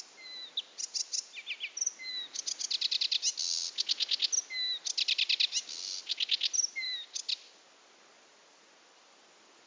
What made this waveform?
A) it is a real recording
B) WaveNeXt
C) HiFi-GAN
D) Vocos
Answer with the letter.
A